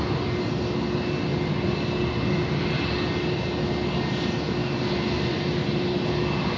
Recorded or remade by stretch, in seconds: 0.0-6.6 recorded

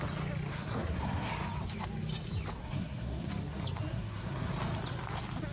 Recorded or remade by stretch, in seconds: 0.0-0.5 recorded; 0.5-1.3 remade; 1.3-2.6 recorded; 2.6-3.3 remade; 3.3-3.9 recorded; 3.9-4.5 remade; 4.5-5.5 recorded

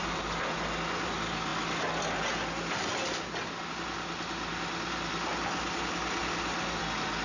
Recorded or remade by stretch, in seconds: 0.0-7.2 recorded

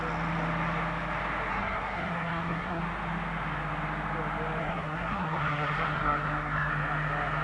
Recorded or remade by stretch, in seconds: 0.0-1.5 recorded; 1.5-2.8 remade; 2.8-4.6 recorded; 4.6-6.7 remade; 6.7-7.4 recorded